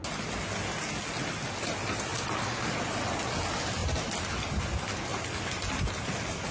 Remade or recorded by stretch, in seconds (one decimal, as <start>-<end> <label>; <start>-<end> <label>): 0.0-6.5 recorded